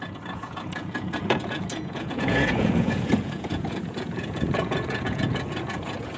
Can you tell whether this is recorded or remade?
remade